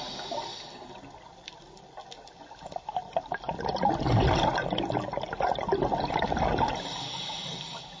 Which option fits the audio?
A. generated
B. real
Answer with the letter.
B